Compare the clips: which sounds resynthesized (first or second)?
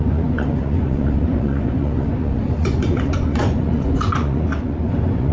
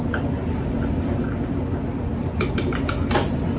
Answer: first